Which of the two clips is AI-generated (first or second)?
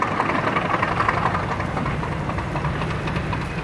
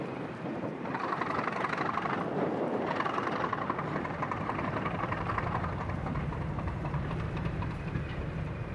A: second